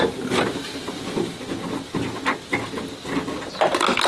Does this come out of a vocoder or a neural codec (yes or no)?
no